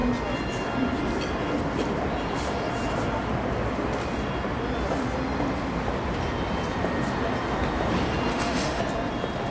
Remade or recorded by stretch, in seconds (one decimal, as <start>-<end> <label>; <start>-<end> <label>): 0.0-8.3 recorded; 8.3-8.8 remade; 8.8-9.5 recorded